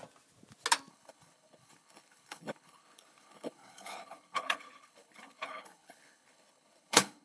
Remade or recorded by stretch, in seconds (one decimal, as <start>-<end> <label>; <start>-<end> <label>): 0.0-0.9 recorded; 0.9-7.2 remade